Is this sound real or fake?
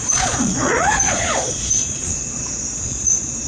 fake